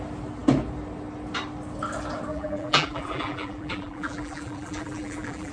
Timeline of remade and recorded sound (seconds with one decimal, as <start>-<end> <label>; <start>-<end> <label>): 0.0-2.3 recorded; 2.3-5.5 remade